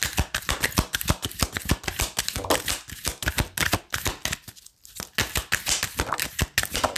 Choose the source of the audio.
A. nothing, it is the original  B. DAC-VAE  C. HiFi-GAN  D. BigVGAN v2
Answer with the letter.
A